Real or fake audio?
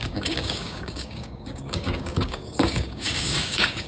fake